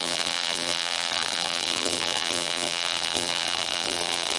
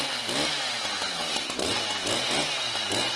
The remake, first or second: first